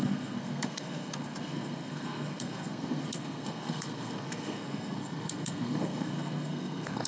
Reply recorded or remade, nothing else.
remade